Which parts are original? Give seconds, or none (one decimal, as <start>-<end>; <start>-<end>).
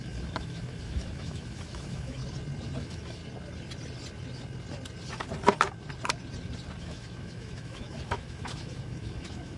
2.2-2.8; 3.2-6.8